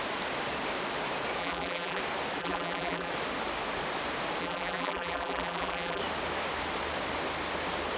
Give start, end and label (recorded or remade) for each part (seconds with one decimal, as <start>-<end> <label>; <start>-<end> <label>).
0.0-1.4 recorded; 1.4-2.0 remade; 2.0-2.4 recorded; 2.4-3.1 remade; 3.1-4.4 recorded; 4.4-6.0 remade; 6.0-8.0 recorded